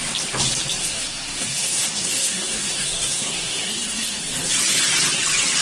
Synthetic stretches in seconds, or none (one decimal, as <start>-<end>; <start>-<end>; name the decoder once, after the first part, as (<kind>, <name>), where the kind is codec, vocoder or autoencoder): 0.8-4.2 (codec, SNAC)